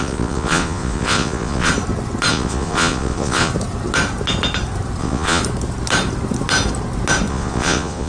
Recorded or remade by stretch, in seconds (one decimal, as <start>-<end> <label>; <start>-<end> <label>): 0.0-1.7 remade; 1.7-2.3 recorded; 2.3-3.5 remade; 3.5-5.0 recorded; 5.0-5.4 remade; 5.4-7.3 recorded; 7.3-8.1 remade